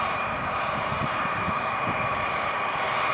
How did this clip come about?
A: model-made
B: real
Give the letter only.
A